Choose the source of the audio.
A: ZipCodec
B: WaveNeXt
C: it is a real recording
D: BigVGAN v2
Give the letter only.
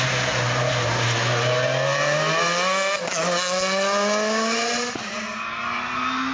C